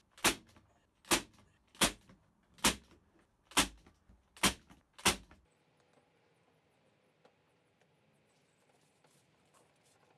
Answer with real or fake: real